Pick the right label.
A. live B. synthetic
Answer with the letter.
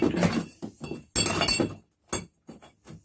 A